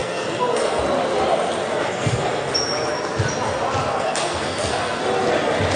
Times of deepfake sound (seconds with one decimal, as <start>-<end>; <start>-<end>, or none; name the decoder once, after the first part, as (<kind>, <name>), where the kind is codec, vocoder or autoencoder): 0.0-0.8 (codec, SNAC); 1.7-2.5; 3.9-5.0